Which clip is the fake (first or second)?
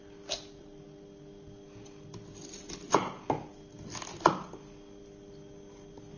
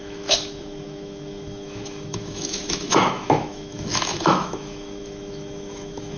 second